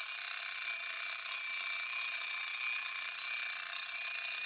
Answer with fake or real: real